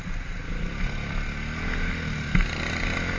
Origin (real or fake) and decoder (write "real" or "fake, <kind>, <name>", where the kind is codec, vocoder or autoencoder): real